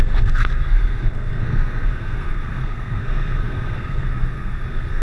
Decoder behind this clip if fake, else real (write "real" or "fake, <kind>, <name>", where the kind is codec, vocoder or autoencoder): fake, codec, SNAC